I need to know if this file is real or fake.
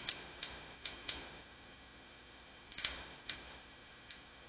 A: fake